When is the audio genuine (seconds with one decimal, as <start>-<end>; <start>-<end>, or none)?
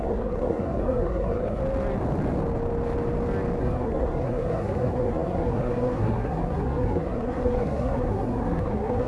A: 1.6-3.6